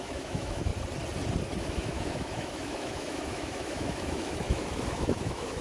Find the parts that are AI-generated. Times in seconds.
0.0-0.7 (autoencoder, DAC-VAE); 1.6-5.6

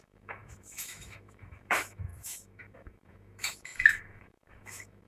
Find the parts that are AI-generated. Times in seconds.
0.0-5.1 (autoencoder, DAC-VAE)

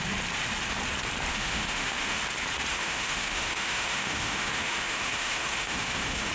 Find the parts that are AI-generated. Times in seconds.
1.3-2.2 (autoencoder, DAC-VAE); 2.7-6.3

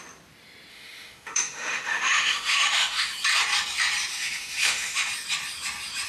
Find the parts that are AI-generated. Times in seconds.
0.7-3.1 (autoencoder, DAC-VAE); 4.1-5.1

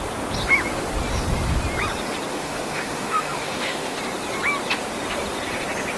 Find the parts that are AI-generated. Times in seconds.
2.3-4.0 (autoencoder, DAC-VAE)

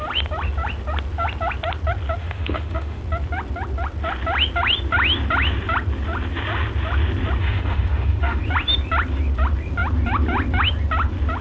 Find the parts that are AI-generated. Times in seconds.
2.2-3.0 (autoencoder, DAC-VAE); 7.4-8.4